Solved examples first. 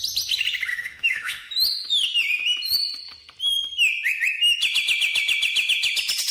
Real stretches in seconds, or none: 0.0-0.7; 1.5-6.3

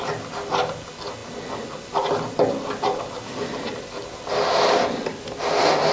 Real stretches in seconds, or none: 0.0-5.9

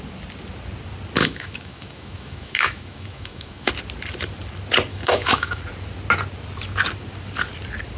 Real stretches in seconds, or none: 0.0-1.2; 3.7-4.9; 5.6-8.0

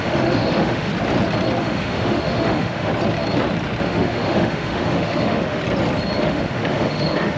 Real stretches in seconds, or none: 0.9-1.6; 2.9-3.8; 5.6-6.2

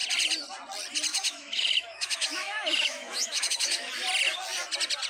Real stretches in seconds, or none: 0.0-1.1; 3.9-5.1

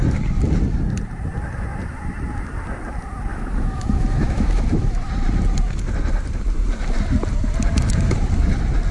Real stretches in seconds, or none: 0.0-3.3; 5.1-8.9

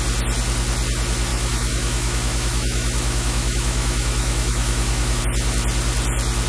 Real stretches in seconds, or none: 0.0-1.3; 5.2-6.5